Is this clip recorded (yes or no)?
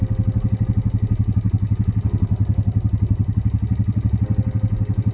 yes